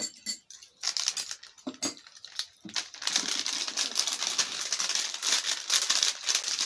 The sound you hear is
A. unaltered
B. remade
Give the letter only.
A